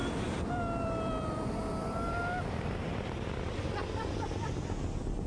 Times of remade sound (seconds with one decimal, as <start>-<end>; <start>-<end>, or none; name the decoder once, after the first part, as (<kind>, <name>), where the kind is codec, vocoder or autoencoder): 0.0-3.8 (vocoder, BigVGAN v2); 4.4-5.3